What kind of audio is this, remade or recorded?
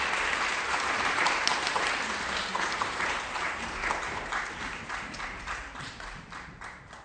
remade